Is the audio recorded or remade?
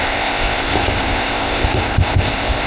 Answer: remade